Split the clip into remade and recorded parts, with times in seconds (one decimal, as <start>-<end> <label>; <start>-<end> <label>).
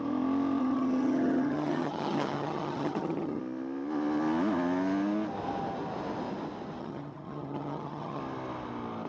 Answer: 0.0-0.6 recorded; 0.6-3.4 remade; 3.4-6.8 recorded; 6.8-8.2 remade; 8.2-9.1 recorded